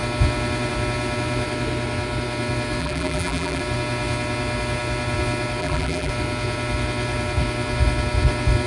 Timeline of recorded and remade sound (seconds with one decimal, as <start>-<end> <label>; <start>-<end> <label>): 0.0-2.8 recorded; 2.8-3.6 remade; 3.6-5.6 recorded; 5.6-6.1 remade; 6.1-8.7 recorded